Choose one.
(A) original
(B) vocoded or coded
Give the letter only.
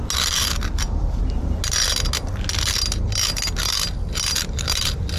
A